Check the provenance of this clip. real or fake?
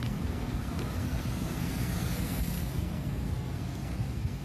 fake